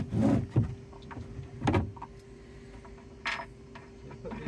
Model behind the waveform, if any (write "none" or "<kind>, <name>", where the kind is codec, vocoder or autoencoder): none